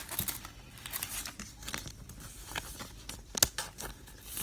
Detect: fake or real real